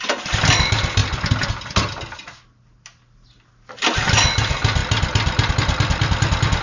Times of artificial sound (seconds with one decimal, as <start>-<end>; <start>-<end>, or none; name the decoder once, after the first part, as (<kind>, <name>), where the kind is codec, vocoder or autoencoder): none

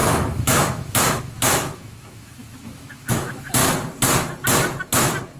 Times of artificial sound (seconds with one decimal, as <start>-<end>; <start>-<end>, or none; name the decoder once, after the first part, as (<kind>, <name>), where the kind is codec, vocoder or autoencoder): 0.0-3.6 (autoencoder, DAC-VAE)

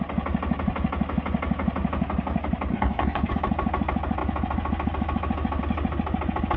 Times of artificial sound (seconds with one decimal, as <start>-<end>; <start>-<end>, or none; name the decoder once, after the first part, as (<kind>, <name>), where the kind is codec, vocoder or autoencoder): 2.7-3.3 (codec, DAC)

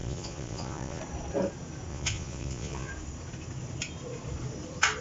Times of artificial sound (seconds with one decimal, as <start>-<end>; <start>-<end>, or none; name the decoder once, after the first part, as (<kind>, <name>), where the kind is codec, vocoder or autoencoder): 0.0-1.0 (vocoder, Vocos); 1.9-2.9

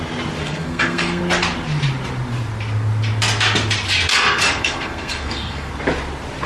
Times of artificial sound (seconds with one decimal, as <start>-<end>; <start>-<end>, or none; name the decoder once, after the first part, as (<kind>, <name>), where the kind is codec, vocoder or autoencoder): 0.4-1.2 (codec, SNAC); 4.1-5.7

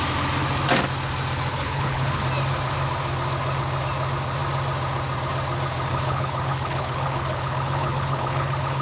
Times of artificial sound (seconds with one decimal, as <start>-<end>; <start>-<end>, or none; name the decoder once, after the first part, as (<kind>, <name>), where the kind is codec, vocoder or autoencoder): 1.5-2.2 (codec, HILCodec); 5.9-8.8

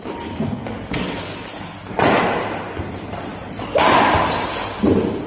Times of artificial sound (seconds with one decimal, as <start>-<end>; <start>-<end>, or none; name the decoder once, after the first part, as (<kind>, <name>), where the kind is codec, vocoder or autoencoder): none

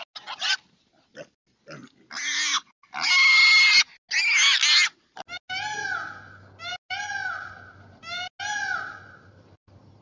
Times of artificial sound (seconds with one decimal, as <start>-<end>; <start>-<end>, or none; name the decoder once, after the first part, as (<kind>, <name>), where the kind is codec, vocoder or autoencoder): none